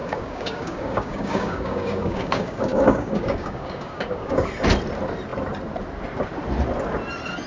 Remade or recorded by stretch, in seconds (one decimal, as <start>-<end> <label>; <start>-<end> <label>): 0.0-4.5 remade; 4.5-7.5 recorded